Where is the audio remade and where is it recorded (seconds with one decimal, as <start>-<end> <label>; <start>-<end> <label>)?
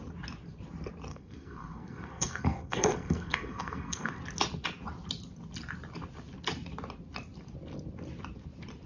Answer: 0.0-1.1 recorded; 1.1-4.2 remade; 4.2-8.9 recorded